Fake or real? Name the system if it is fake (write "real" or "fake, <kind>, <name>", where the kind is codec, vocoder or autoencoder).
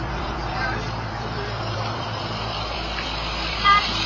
fake, vocoder, BigVGAN v2